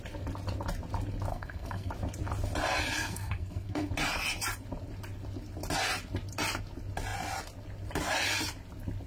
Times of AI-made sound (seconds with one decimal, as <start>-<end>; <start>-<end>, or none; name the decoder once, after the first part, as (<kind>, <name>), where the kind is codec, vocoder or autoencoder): 1.3-1.9 (codec, SNAC); 3.0-3.9